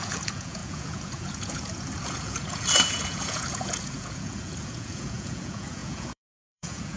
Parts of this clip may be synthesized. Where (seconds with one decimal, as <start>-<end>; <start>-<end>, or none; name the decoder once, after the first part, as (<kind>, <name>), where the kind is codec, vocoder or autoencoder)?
0.0-7.0 (vocoder, Vocos)